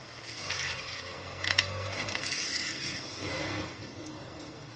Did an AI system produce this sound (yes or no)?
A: yes